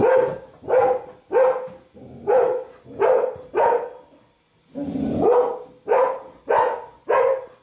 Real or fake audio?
real